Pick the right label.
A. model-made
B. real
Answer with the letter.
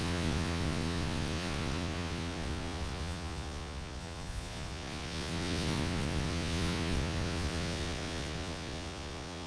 A